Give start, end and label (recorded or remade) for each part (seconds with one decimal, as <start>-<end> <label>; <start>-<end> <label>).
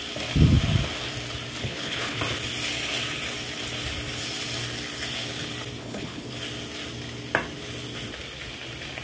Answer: 0.0-1.6 recorded; 1.6-2.2 remade; 2.2-5.8 recorded; 5.8-6.3 remade; 6.3-9.0 recorded